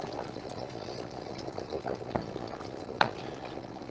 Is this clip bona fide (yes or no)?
no